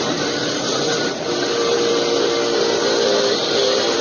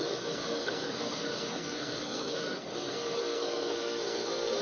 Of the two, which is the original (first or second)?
first